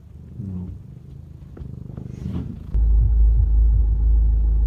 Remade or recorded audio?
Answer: recorded